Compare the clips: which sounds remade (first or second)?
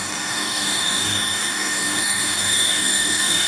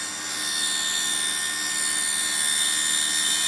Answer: first